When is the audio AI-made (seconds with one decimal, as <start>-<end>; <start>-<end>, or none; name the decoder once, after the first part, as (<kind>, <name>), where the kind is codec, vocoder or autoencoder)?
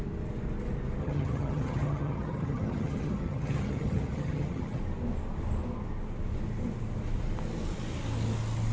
1.0-4.8 (vocoder, HiFi-GAN)